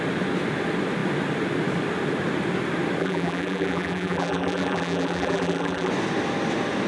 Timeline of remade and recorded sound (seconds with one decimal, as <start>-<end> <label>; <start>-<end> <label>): 0.0-3.0 recorded; 3.0-5.9 remade; 5.9-6.9 recorded

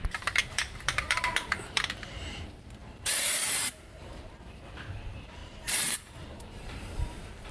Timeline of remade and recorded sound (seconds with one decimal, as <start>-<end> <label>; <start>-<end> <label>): 0.0-7.5 remade

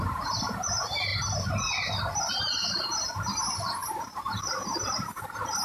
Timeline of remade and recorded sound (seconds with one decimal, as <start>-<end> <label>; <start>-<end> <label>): 0.0-1.1 remade; 1.1-2.3 recorded; 2.3-5.6 remade

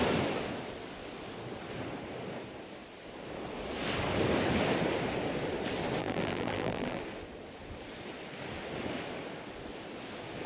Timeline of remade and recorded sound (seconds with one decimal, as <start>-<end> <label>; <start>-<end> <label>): 0.0-6.0 recorded; 6.0-7.0 remade; 7.0-10.5 recorded